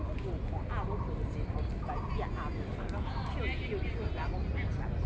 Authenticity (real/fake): real